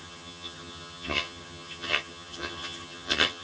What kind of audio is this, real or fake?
fake